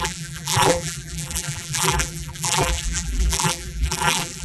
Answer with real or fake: fake